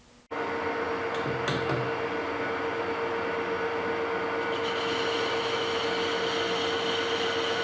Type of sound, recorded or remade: recorded